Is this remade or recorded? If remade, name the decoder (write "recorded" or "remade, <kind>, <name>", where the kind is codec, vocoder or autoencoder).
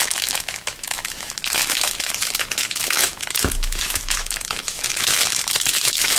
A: remade, autoencoder, DAC-VAE